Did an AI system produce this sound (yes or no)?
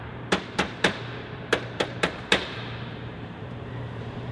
yes